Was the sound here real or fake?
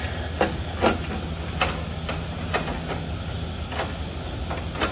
real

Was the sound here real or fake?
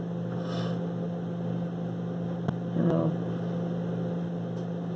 real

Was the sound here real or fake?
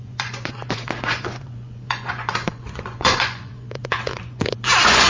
fake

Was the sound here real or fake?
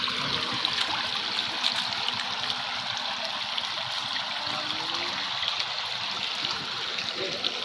real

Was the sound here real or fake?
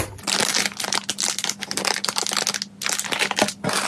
real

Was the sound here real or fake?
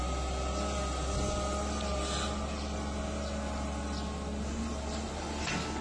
real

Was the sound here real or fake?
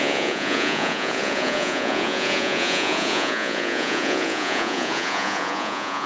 fake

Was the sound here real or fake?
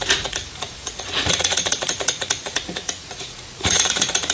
fake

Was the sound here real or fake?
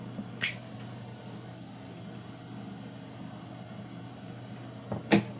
real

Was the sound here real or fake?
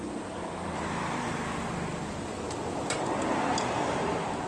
real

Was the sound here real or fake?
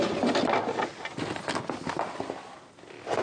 real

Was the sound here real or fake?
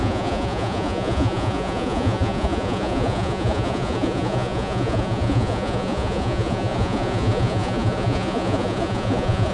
fake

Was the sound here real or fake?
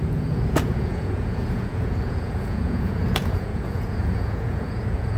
fake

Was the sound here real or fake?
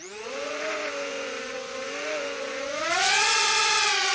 fake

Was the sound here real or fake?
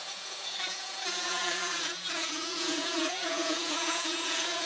fake